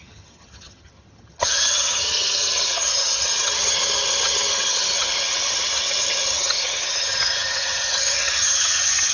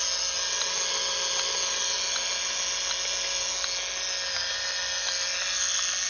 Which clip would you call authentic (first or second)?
second